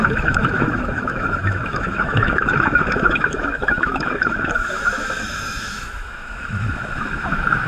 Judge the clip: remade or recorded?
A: remade